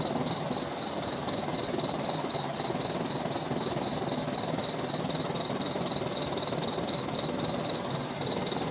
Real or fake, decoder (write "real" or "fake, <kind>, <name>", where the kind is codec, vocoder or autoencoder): real